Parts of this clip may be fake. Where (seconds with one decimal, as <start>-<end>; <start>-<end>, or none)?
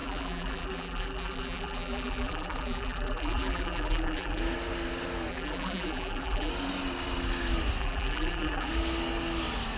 0.0-4.4; 5.3-6.5; 7.8-8.7